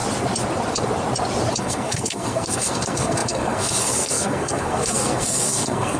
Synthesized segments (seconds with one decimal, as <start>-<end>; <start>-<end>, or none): 1.6-6.0